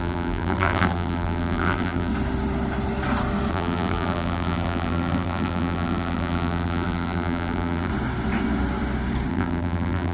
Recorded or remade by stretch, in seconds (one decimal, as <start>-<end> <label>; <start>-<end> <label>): 0.0-2.1 remade; 2.1-3.5 recorded; 3.5-7.9 remade; 7.9-9.3 recorded; 9.3-10.1 remade